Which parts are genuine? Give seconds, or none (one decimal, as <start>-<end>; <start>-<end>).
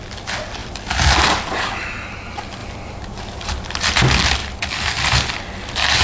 0.0-0.6; 1.5-2.6; 4.0-6.0